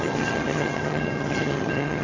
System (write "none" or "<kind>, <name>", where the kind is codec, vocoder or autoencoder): vocoder, HiFi-GAN